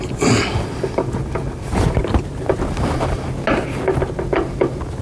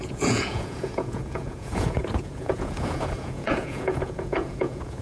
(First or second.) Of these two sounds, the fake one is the second